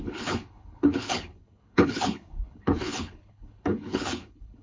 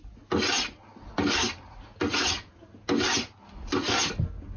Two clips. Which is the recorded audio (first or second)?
second